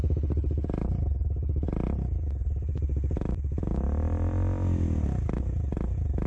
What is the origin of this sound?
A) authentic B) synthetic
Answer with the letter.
A